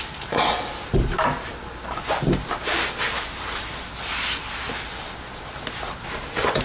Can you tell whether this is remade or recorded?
recorded